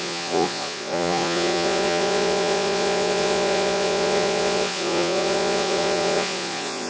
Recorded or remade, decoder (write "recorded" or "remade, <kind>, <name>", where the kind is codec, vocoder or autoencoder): remade, vocoder, Vocos